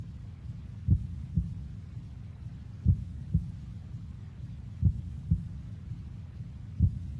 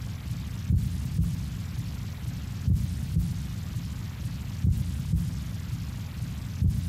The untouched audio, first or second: second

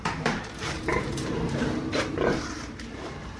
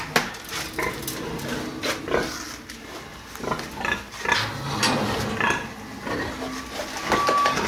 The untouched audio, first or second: second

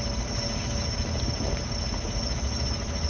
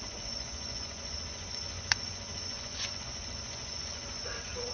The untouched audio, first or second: first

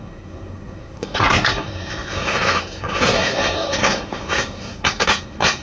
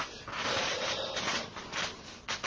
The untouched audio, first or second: second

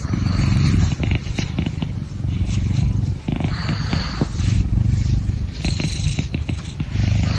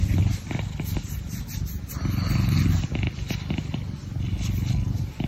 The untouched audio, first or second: second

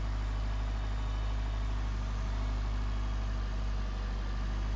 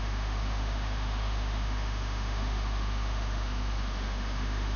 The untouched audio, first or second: first